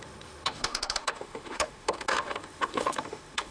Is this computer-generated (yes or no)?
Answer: yes